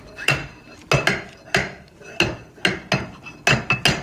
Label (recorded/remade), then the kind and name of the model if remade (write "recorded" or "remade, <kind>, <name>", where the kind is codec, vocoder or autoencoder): recorded